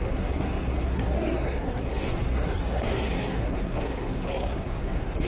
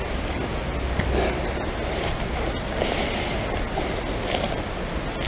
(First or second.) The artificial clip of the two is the first